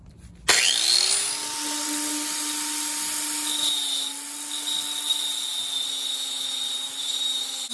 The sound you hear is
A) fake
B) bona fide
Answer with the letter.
B